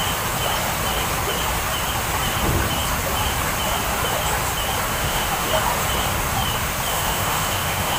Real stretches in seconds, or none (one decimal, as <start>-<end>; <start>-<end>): 0.0-4.9; 5.5-6.9